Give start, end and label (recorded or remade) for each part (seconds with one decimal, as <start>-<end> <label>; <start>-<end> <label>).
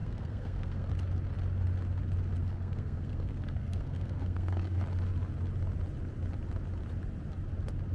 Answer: 0.0-0.9 remade; 0.9-2.4 recorded; 2.4-4.8 remade; 4.8-7.9 recorded